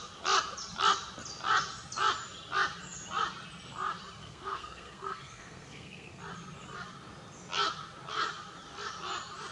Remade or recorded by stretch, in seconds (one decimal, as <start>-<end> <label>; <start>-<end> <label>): 0.0-4.2 recorded; 4.2-6.2 remade; 6.2-9.5 recorded